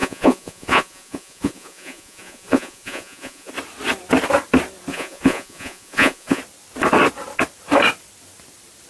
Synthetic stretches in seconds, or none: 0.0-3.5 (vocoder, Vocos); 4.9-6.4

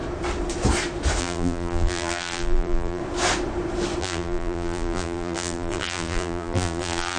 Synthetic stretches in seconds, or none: 1.2-3.0 (vocoder, BigVGAN v2); 4.0-7.2

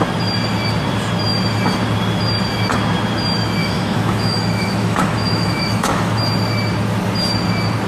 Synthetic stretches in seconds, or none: 3.6-6.2 (autoencoder, DAC-VAE)

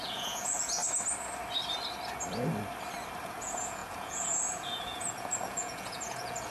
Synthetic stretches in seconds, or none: 0.0-0.8 (vocoder, Vocos); 3.2-6.5